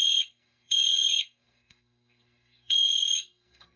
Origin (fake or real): fake